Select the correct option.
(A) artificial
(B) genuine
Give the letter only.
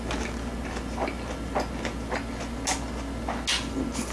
B